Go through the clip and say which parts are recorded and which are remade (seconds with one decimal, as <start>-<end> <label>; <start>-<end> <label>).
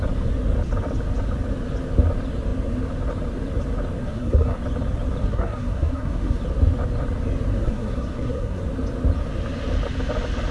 0.0-4.0 recorded; 4.0-4.6 remade; 4.6-5.2 recorded; 5.2-6.4 remade; 6.4-7.5 recorded; 7.5-8.6 remade; 8.6-10.5 recorded